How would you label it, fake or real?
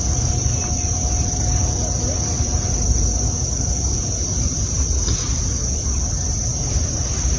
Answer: real